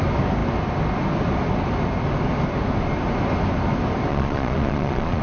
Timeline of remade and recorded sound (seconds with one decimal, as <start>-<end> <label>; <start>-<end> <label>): 0.0-4.1 recorded; 4.1-5.2 remade